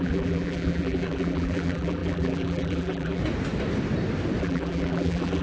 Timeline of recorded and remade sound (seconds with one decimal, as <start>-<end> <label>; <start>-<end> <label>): 0.0-3.2 remade; 3.2-4.4 recorded; 4.4-5.4 remade